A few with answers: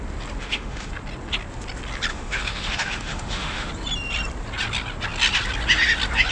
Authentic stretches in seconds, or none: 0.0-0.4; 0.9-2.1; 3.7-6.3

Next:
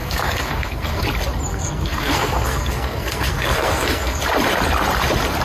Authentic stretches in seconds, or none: 1.0-1.5; 4.2-5.4

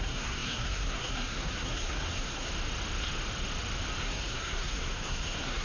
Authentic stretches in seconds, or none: 2.5-4.0

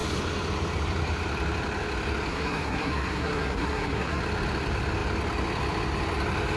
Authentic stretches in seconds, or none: 0.0-2.3; 4.2-6.6

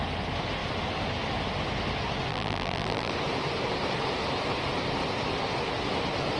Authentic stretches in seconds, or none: 0.0-2.3; 3.1-6.4